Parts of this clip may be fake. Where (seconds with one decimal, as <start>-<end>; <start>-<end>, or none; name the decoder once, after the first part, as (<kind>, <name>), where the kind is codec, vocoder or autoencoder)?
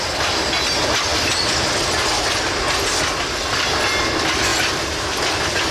none